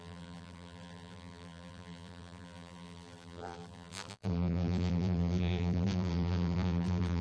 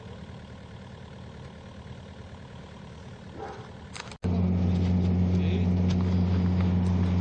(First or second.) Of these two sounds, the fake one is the first